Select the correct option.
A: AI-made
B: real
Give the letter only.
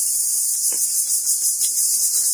B